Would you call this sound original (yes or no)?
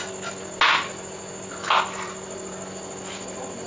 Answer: yes